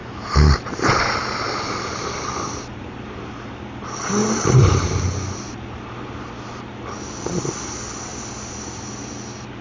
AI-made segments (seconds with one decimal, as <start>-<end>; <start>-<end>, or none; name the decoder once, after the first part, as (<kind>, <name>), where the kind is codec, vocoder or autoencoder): 0.0-3.5 (vocoder, BigVGAN v2); 4.2-6.2